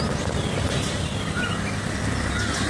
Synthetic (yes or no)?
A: no